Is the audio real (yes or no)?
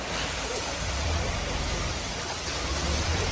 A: no